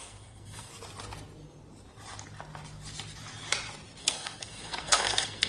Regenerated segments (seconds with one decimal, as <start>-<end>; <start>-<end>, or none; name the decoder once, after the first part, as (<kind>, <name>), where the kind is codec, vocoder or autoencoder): 0.0-0.7 (codec, SNAC); 4.0-5.5